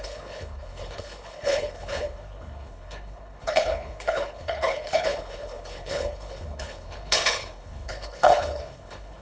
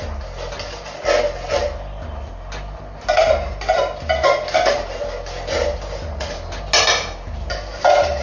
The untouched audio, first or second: second